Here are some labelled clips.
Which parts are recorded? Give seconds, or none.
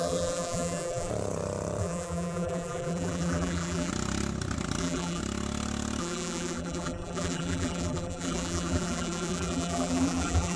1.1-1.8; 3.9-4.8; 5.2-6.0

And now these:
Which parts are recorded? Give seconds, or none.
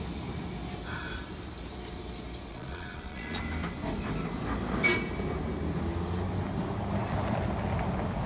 0.0-2.5; 3.4-8.3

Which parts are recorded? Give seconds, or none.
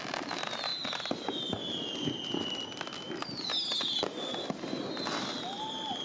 0.7-4.3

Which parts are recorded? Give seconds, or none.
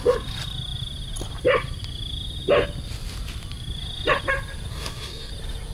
0.0-4.7; 5.3-5.7